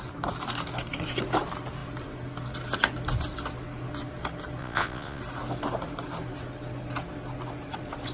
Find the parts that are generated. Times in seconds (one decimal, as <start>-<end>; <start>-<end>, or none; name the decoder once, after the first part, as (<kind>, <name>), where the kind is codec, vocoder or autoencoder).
4.6-5.2 (vocoder, Vocos)